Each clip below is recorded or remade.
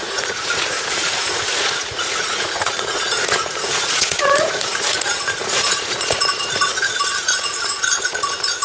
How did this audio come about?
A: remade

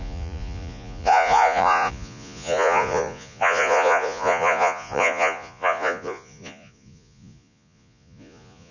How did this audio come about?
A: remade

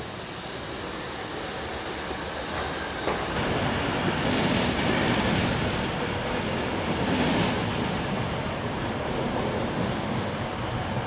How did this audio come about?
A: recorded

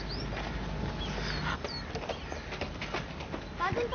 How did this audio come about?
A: recorded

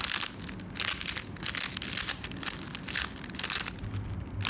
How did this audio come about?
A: recorded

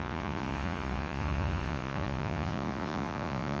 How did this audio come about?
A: remade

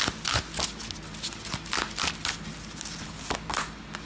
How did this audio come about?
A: recorded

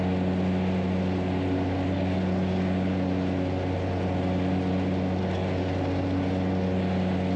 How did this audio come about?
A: recorded